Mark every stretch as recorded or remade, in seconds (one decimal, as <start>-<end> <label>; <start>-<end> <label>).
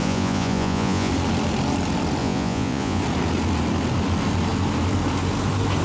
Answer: 0.0-1.1 remade; 1.1-2.2 recorded; 2.2-3.0 remade; 3.0-5.8 recorded